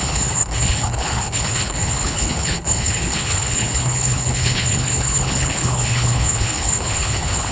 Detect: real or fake fake